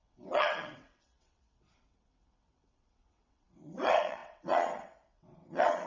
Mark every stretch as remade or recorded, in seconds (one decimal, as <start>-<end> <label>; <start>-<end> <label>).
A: 0.0-5.9 remade